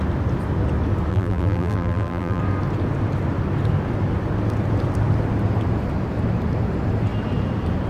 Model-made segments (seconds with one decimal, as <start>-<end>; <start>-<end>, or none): 1.1-2.4